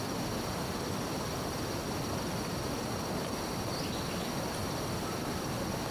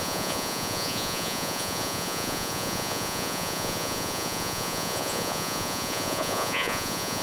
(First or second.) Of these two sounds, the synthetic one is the second